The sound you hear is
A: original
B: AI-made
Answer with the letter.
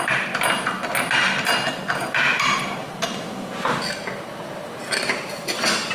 A